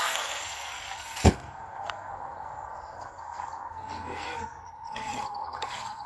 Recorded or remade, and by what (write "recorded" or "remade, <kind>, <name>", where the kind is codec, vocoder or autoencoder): remade, codec, SNAC